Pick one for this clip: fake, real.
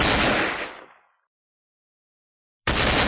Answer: real